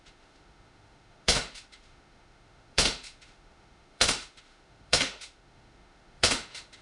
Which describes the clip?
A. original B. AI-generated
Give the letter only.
B